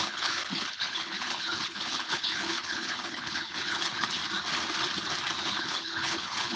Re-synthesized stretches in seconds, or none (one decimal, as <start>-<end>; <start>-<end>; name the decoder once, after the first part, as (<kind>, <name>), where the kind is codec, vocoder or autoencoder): 0.0-4.2 (codec, HILCodec); 5.4-6.6